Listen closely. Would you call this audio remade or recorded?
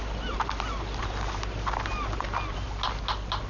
recorded